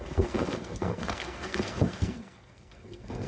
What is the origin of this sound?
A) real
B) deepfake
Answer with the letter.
B